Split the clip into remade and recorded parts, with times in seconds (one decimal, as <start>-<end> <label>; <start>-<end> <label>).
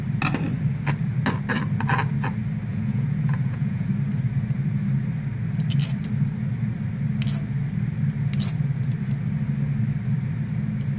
0.0-2.7 recorded; 2.7-3.9 remade; 3.9-11.0 recorded